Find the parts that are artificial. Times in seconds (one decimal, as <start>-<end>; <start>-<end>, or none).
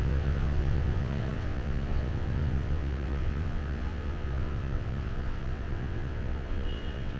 0.0-7.2